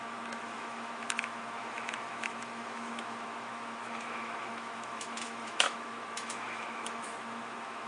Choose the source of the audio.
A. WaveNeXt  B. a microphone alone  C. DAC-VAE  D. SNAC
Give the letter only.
C